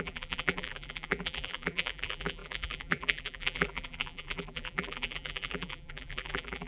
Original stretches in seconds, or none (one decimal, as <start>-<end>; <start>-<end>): none